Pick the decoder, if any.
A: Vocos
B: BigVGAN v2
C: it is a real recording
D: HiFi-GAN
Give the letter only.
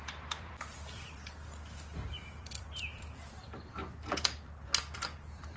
B